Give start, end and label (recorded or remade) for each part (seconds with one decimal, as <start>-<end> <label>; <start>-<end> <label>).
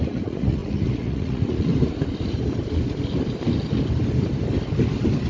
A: 0.0-1.7 remade; 1.7-5.3 recorded